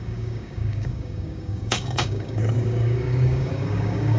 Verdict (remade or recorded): remade